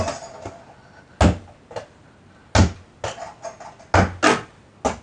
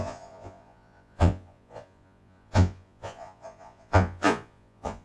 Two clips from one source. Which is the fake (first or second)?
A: second